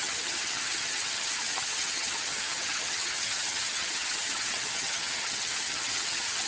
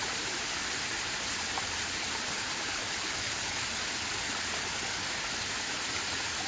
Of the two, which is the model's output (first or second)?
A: first